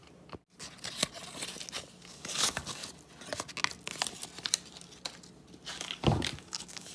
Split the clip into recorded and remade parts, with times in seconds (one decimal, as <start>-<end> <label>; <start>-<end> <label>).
0.0-2.1 recorded; 2.1-2.8 remade; 2.8-5.7 recorded; 5.7-6.9 remade